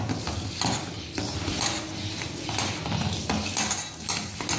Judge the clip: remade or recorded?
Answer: recorded